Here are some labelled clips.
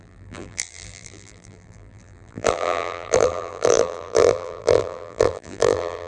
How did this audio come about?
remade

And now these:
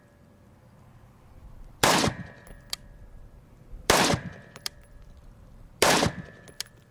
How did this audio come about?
remade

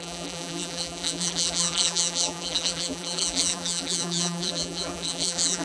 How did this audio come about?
remade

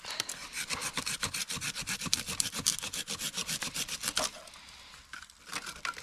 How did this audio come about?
recorded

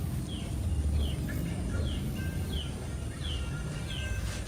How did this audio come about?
recorded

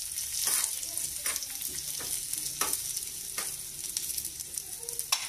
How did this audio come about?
recorded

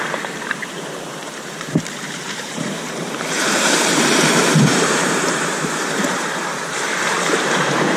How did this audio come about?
remade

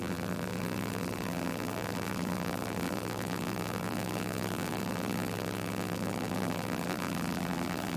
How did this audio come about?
remade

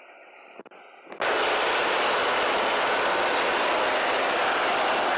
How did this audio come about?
recorded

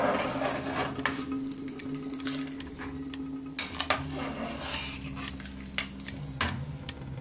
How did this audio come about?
recorded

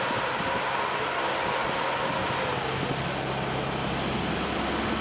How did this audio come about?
recorded